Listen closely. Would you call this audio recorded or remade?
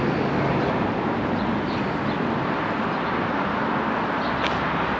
recorded